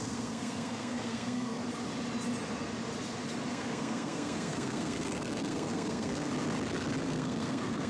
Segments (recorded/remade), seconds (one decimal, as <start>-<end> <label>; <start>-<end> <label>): 0.0-1.6 remade; 1.6-3.5 recorded; 3.5-6.3 remade; 6.3-7.0 recorded; 7.0-7.9 remade